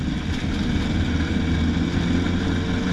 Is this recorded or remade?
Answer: recorded